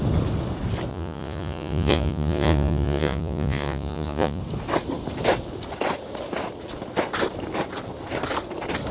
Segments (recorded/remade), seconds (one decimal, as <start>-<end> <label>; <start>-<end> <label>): 0.0-0.9 recorded; 0.9-4.4 remade; 4.4-8.9 recorded